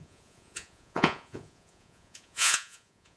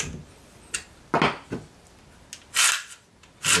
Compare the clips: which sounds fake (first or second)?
first